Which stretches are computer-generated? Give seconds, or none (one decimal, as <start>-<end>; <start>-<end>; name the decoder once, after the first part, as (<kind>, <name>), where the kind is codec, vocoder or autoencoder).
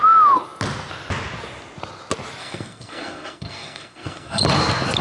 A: 2.4-4.4 (codec, SNAC)